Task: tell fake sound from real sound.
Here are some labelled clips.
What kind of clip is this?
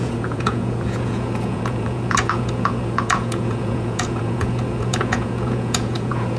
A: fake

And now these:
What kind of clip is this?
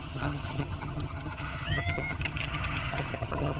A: fake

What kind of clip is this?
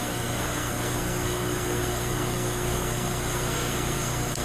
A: fake